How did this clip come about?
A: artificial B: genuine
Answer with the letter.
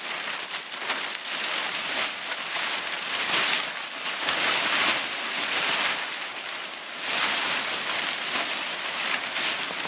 B